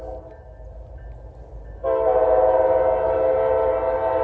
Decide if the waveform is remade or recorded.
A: recorded